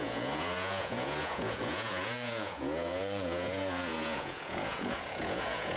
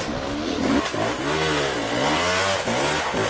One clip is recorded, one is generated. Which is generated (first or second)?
first